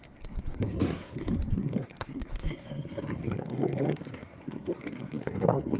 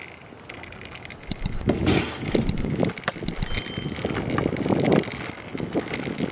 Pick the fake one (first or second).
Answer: first